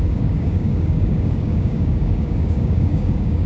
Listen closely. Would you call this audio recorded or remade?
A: remade